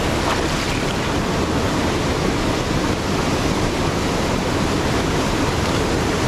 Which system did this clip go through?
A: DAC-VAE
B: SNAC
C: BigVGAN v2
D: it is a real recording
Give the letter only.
D